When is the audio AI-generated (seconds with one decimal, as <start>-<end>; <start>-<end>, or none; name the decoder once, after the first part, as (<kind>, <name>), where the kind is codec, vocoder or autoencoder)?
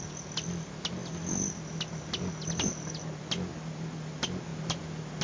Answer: none